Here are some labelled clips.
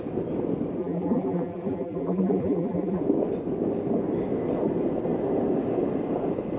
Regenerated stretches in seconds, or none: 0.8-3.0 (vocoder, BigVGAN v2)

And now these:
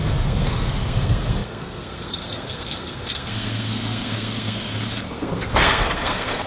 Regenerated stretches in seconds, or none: 0.0-6.5 (codec, SNAC)

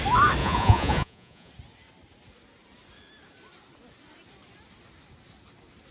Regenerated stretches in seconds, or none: 0.4-1.5 (vocoder, Vocos)

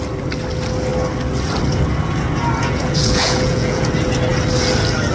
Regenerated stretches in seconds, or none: 2.6-3.9 (vocoder, Vocos)

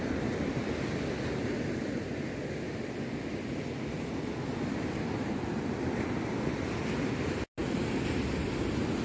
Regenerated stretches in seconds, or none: none